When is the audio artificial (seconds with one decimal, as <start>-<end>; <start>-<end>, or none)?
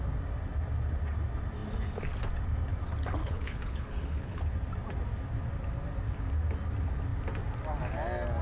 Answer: 3.2-4.4